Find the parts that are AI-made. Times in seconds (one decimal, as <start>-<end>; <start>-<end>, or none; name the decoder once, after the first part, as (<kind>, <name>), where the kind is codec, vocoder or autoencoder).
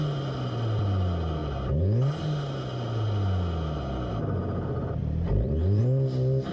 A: 5.0-5.8 (vocoder, BigVGAN v2)